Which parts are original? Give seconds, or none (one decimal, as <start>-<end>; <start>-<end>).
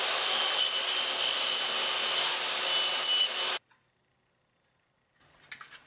0.0-5.9